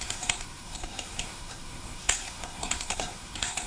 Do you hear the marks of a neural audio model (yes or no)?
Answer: yes